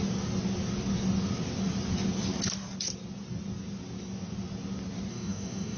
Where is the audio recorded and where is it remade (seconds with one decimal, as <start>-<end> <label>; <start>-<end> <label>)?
0.0-5.1 recorded; 5.1-5.8 remade